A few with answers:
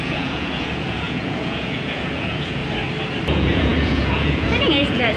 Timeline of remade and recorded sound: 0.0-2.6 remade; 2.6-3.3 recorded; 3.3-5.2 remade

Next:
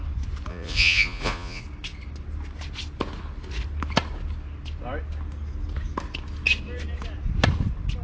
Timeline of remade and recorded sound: 0.0-0.5 recorded; 0.5-1.6 remade; 1.6-8.0 recorded